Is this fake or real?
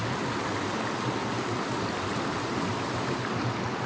real